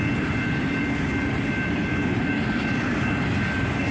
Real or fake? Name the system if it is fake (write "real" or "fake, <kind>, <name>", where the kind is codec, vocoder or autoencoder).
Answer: real